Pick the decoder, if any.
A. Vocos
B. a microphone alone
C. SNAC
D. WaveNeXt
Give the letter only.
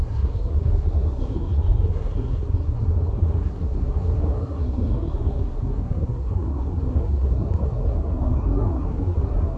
C